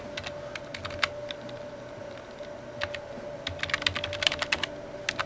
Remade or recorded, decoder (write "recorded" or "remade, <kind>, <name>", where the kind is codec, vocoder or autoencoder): recorded